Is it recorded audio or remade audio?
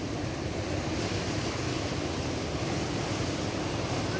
recorded